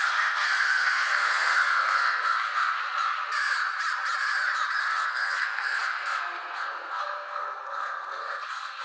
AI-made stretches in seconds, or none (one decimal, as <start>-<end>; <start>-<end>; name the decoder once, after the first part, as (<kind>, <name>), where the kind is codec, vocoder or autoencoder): 0.0-2.8 (codec, SNAC); 4.8-8.8